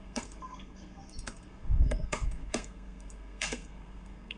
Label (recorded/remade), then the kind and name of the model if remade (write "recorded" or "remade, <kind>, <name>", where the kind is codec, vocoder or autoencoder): remade, codec, SNAC